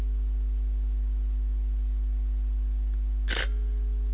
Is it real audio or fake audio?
real